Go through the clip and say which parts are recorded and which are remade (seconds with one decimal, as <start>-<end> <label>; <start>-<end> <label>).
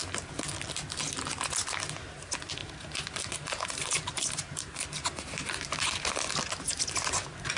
0.0-2.6 recorded; 2.6-5.8 remade; 5.8-7.6 recorded